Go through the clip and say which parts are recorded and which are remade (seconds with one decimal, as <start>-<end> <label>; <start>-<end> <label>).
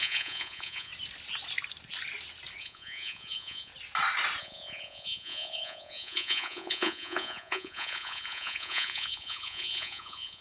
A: 0.0-0.9 remade; 0.9-2.6 recorded; 2.6-3.7 remade; 3.7-4.4 recorded; 4.4-10.4 remade